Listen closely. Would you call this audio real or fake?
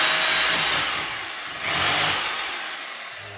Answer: real